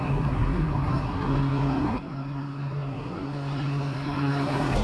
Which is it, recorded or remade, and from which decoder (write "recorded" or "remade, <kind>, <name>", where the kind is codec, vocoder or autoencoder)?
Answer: remade, codec, SNAC